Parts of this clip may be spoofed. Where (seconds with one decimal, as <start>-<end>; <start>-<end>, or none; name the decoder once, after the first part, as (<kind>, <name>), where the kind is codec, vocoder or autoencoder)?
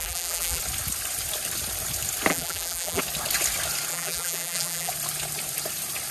0.0-0.6 (vocoder, BigVGAN v2); 2.3-3.0; 3.9-4.9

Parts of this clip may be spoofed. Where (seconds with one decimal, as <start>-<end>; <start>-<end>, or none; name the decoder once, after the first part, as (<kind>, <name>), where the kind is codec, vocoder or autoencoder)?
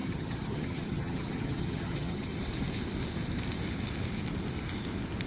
0.0-2.3 (vocoder, HiFi-GAN)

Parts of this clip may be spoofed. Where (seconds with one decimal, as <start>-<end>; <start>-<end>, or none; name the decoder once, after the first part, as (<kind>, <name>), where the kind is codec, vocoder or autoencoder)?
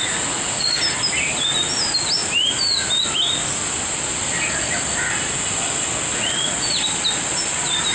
0.0-0.8 (vocoder, Vocos); 6.1-6.7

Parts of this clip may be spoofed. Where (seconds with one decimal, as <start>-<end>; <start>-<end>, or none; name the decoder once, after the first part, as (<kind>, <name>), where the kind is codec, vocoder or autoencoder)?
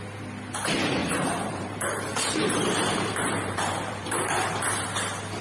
1.0-4.2 (vocoder, BigVGAN v2)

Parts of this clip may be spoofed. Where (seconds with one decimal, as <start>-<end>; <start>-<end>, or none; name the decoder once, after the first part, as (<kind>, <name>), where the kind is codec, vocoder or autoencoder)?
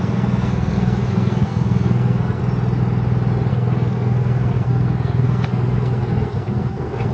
0.0-2.4 (codec, SNAC); 3.5-7.1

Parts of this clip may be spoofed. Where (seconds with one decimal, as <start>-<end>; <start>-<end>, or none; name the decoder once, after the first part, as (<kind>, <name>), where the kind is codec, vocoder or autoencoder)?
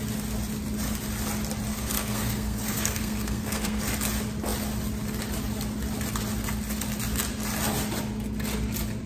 1.7-3.8 (codec, SNAC)